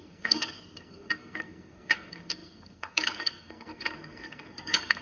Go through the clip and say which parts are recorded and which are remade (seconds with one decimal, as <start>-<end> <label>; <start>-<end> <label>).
0.0-5.0 remade